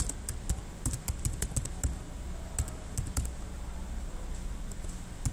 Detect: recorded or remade recorded